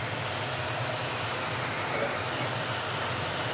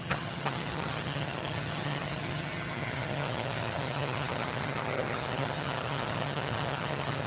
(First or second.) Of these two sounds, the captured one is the first